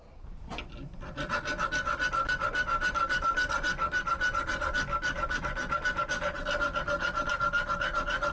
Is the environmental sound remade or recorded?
recorded